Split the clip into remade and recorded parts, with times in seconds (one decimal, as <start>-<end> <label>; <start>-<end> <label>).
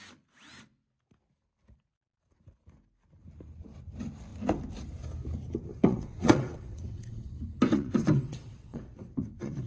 0.0-5.7 recorded; 5.7-7.3 remade; 7.3-7.7 recorded; 7.7-9.7 remade